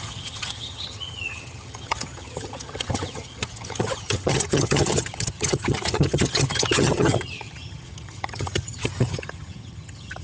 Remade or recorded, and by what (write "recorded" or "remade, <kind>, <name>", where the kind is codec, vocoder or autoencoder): remade, vocoder, HiFi-GAN